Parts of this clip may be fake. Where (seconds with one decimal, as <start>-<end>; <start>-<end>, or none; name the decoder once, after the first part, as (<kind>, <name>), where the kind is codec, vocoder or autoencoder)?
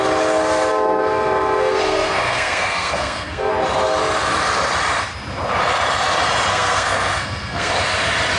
0.7-3.5 (codec, SNAC); 6.5-7.7